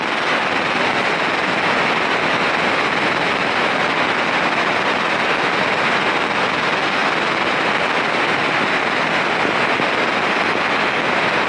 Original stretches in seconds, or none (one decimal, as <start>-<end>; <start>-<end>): 0.0-3.4; 6.5-11.5